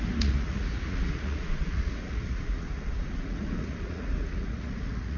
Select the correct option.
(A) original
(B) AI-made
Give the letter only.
B